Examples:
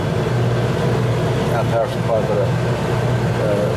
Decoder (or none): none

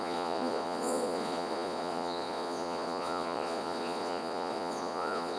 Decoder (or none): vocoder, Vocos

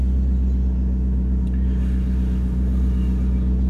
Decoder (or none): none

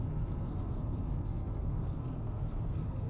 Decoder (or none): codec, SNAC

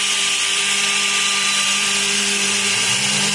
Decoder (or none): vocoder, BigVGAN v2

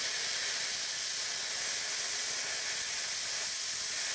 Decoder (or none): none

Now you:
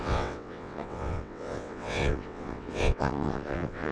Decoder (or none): vocoder, WaveNeXt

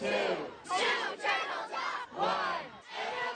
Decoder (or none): none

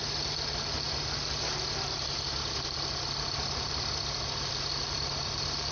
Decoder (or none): none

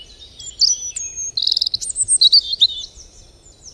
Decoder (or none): none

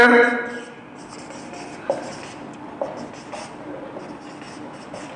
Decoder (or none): none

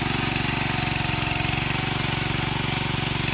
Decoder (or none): none